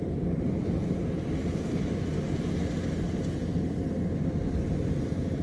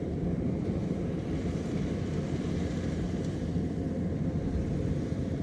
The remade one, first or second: second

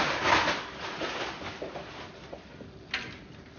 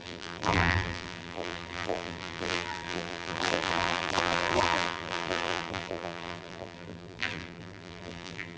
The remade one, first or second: second